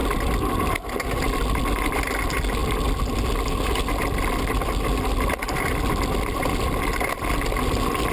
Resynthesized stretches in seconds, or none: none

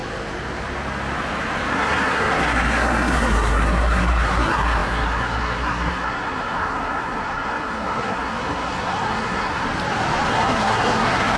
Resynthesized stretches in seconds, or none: 1.7-9.7 (codec, SNAC); 10.3-11.4

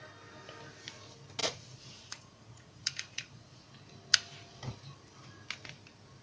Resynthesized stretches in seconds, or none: 1.4-3.7 (vocoder, Vocos)

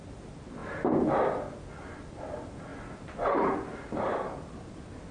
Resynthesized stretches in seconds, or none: none